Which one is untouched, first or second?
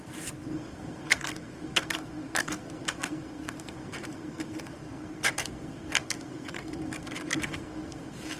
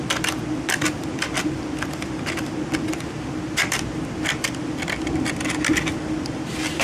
second